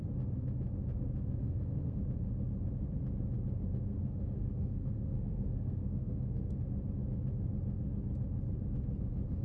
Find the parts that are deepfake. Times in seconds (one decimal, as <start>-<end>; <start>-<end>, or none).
1.4-2.0; 3.9-6.6